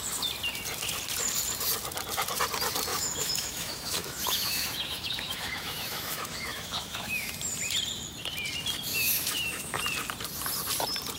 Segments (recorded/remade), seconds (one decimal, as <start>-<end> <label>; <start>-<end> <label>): 0.0-2.9 recorded; 2.9-7.3 remade; 7.3-8.9 recorded; 8.9-9.8 remade; 9.8-11.2 recorded